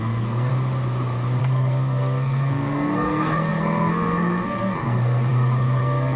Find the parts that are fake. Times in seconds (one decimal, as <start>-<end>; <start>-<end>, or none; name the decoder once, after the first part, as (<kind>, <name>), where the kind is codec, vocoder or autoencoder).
0.0-0.5 (codec, SNAC); 1.4-6.2